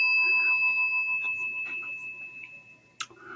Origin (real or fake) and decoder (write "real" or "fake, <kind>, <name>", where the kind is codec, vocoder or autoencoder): real